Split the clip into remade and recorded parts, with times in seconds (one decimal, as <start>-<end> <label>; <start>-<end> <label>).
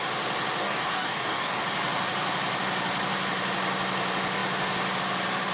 0.0-0.6 recorded; 0.6-1.6 remade; 1.6-5.5 recorded